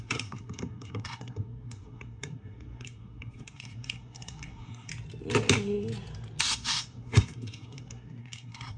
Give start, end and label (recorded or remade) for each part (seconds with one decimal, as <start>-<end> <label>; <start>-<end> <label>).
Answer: 0.0-4.9 remade; 4.9-6.4 recorded; 6.4-8.8 remade